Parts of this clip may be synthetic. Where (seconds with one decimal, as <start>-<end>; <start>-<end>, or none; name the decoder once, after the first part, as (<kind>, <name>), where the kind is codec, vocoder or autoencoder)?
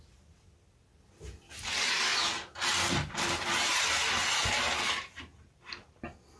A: none